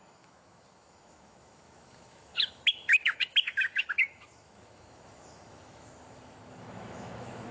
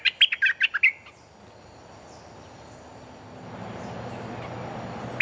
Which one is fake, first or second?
first